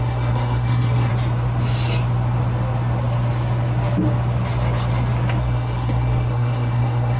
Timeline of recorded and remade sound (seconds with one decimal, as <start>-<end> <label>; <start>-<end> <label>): 0.0-1.1 remade; 1.1-5.4 recorded; 5.4-7.2 remade